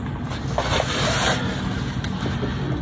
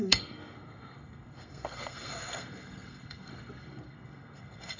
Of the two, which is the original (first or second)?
first